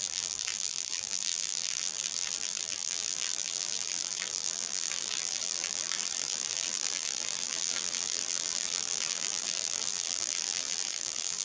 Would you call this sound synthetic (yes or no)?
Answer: yes